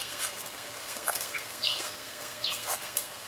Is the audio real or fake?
fake